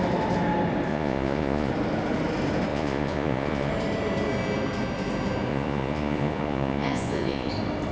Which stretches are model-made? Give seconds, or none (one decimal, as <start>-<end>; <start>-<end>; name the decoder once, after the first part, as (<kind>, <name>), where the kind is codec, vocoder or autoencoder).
0.9-1.7 (vocoder, Vocos); 2.7-3.7; 5.5-7.5